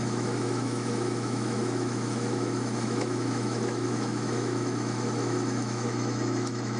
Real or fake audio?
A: fake